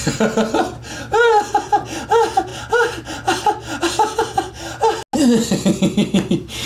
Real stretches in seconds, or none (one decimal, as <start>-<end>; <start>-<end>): 0.0-6.7